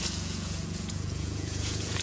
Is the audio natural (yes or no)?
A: no